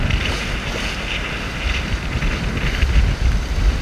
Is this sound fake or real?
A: real